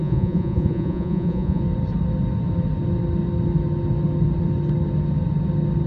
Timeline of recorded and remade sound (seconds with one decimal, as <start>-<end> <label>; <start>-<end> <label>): 0.0-1.6 remade; 1.6-5.9 recorded